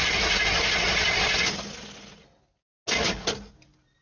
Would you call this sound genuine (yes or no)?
yes